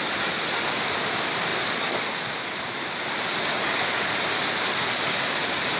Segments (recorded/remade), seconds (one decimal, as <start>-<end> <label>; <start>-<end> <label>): 0.0-5.8 recorded